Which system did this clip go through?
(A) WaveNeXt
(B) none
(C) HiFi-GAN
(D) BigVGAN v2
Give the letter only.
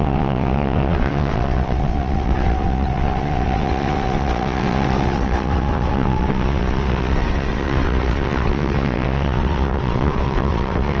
A